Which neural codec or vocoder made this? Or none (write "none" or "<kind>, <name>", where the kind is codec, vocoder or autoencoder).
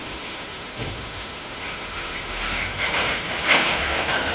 autoencoder, DAC-VAE